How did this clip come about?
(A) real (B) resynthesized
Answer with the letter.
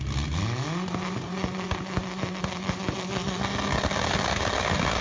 A